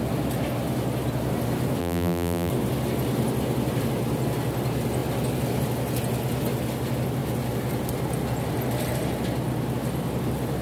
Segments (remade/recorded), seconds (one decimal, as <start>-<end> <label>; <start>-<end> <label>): 0.0-1.8 recorded; 1.8-2.5 remade; 2.5-10.6 recorded